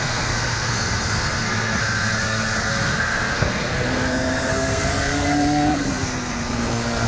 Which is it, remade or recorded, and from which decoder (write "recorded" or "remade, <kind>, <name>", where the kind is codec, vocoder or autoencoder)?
remade, codec, SNAC